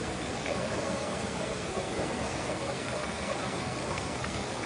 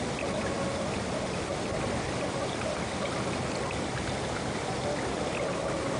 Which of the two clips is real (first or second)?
second